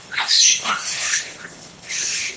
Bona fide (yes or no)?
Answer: no